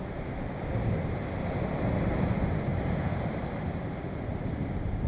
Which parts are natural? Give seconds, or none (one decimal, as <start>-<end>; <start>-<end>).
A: 0.0-2.7